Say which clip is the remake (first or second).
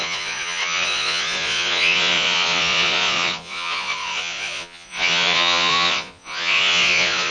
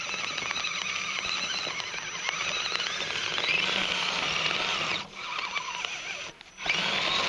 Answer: first